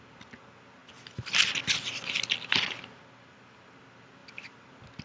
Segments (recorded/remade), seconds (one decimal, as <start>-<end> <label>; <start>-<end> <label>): 0.0-5.0 recorded